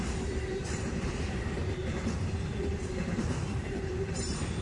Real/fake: fake